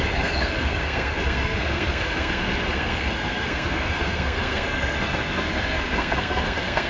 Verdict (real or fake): fake